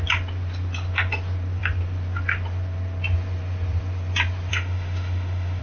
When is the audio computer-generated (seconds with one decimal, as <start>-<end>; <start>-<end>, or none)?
4.5-5.6